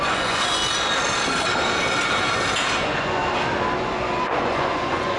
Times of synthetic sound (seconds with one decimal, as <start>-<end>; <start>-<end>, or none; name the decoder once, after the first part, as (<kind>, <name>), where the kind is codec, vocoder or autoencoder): 0.0-0.6 (vocoder, Vocos); 2.8-3.2; 3.8-5.2